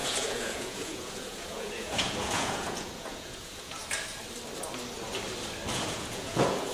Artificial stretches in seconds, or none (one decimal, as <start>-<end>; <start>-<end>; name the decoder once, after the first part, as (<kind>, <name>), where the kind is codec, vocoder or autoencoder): 0.0-3.8 (vocoder, Vocos); 5.7-6.7